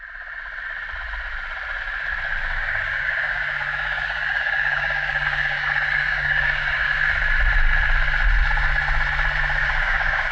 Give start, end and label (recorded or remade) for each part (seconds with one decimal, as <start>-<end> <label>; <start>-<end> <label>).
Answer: 0.0-2.4 recorded; 2.4-6.9 remade; 6.9-9.6 recorded; 9.6-10.3 remade